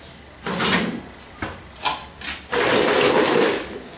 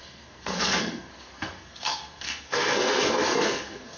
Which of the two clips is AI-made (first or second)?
second